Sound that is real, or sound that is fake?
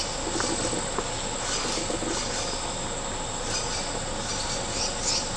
real